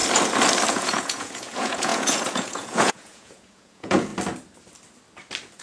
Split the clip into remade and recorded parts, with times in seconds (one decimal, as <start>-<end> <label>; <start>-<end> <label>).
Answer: 0.0-0.7 recorded; 0.7-4.1 remade; 4.1-5.6 recorded